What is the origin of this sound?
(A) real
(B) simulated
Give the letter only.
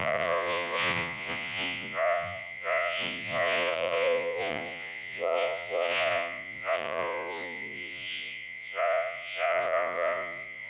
B